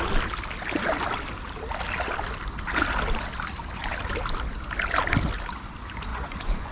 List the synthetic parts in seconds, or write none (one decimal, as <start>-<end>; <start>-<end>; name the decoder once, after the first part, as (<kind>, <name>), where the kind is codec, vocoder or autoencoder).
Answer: 6.1-6.7 (vocoder, Vocos)